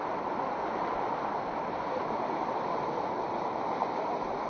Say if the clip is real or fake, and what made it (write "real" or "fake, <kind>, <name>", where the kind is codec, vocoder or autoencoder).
real